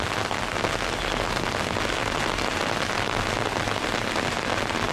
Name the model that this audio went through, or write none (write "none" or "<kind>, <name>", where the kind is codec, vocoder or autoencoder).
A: none